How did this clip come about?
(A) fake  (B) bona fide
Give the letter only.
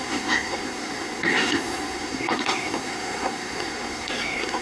A